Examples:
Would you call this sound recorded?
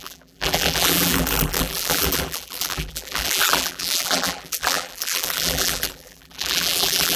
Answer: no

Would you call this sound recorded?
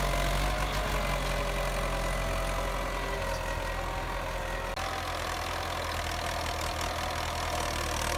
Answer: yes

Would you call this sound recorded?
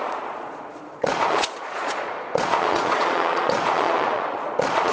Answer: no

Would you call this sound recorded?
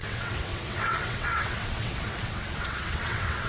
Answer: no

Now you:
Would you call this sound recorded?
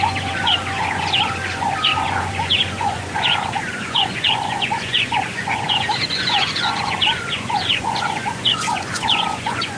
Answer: no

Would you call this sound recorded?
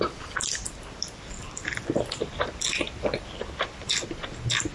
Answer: yes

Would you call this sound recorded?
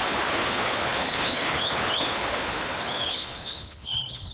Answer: no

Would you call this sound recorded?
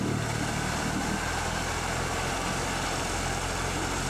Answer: yes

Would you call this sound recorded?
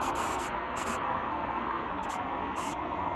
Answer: no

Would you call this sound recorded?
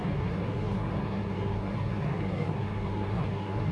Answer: no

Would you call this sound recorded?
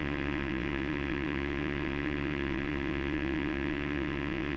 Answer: no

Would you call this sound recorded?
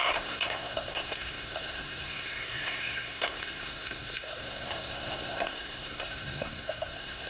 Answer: no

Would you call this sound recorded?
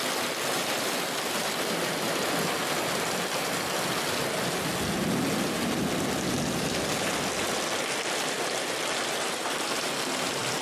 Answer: yes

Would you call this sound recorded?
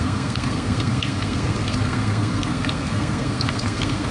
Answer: no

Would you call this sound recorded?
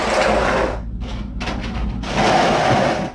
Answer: yes